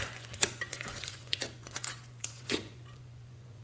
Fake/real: fake